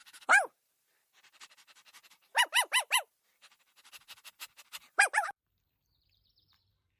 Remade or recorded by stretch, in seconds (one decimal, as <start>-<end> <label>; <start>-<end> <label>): 0.0-7.0 remade